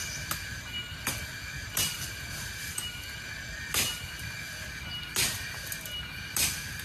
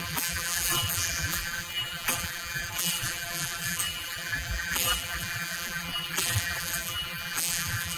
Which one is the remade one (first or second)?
second